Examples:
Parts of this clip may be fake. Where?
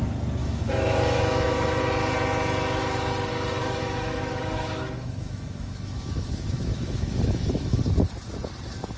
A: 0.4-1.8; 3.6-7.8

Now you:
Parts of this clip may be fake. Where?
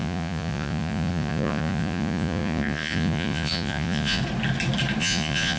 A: 0.0-4.2; 5.0-5.6